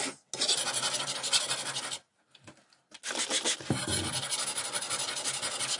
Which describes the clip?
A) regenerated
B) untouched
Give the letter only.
B